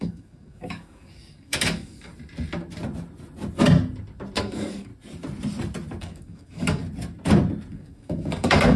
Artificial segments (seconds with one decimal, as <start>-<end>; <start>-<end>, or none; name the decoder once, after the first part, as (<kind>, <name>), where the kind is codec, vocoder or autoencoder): 0.0-2.1 (codec, DAC); 4.4-4.9; 6.0-6.8; 7.7-8.8